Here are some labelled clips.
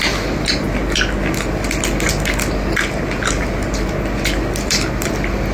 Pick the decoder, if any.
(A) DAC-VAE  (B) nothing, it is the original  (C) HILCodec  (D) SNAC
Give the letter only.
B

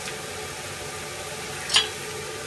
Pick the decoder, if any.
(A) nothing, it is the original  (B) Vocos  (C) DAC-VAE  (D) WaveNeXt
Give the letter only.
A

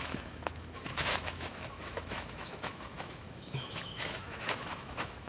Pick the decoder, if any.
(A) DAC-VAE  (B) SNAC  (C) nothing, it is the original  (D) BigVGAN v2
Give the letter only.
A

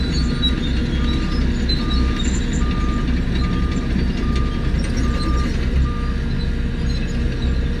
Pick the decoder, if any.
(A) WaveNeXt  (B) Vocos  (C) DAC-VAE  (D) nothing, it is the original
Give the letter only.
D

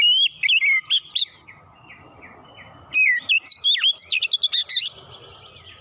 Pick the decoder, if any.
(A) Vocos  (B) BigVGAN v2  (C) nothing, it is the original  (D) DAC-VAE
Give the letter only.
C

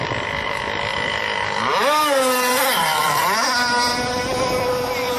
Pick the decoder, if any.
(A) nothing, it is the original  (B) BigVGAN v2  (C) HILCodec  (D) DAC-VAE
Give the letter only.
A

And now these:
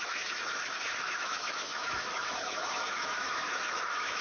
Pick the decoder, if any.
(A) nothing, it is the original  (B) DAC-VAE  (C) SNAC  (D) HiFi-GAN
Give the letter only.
B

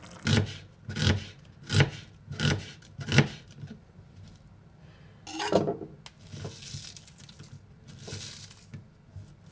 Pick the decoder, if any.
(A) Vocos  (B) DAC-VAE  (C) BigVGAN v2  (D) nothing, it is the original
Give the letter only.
D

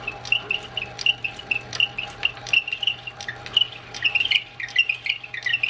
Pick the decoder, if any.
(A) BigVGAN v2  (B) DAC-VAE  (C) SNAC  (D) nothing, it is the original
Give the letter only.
D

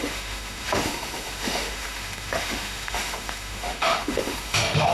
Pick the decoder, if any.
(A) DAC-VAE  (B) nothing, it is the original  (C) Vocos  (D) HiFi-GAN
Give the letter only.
A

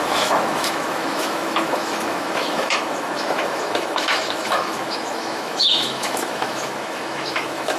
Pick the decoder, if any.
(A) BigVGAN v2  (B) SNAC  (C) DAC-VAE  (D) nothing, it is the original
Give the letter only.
C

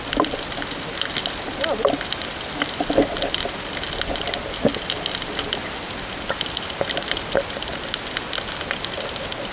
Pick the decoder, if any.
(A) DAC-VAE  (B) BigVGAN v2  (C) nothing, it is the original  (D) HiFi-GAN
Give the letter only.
C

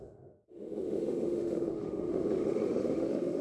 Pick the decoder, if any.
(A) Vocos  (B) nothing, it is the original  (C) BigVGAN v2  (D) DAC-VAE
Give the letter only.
D